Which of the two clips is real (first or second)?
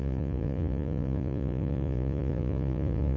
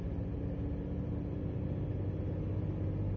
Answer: second